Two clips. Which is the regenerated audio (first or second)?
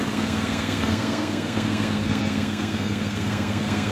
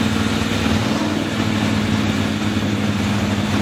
first